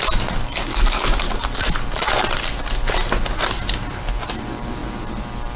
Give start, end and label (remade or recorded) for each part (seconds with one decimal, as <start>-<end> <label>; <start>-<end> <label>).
0.0-5.6 recorded